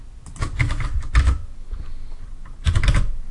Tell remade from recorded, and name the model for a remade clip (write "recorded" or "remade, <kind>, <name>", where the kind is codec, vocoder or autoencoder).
recorded